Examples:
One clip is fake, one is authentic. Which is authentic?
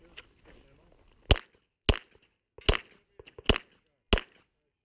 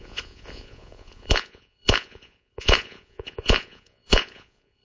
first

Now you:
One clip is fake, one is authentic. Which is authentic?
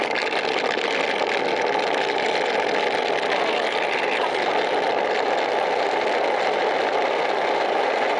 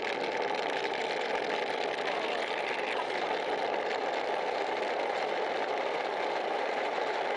first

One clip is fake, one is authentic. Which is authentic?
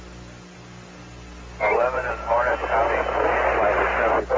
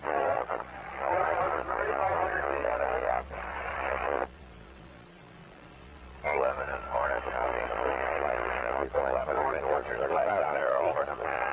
first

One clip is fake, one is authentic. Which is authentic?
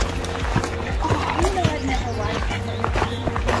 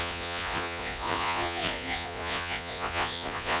first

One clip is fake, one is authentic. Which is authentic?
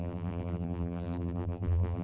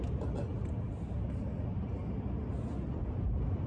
second